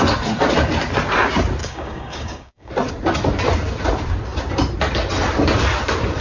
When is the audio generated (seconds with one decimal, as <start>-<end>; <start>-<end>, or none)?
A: 1.6-2.7